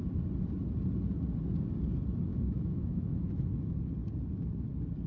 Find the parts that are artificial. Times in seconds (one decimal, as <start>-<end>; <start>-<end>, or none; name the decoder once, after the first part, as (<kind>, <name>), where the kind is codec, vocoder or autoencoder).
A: 2.3-3.3 (autoencoder, DAC-VAE)

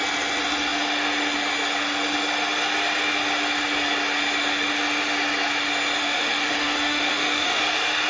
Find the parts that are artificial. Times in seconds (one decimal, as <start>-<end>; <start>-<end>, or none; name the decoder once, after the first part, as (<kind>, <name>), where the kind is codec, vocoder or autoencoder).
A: 6.0-7.6 (autoencoder, DAC-VAE)

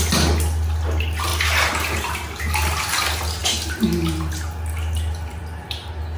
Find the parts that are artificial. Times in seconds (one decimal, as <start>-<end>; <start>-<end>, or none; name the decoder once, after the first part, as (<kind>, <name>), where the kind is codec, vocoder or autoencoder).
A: none